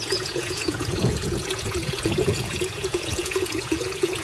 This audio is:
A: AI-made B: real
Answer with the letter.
A